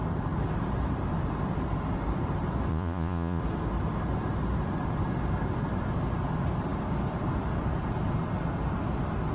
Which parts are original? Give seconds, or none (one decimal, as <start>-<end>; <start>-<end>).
0.0-2.7; 3.4-9.3